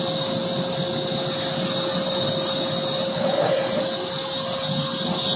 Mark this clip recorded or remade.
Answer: recorded